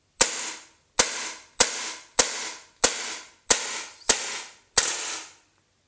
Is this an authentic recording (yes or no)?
yes